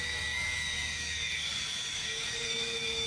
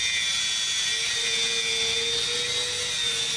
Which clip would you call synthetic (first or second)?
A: first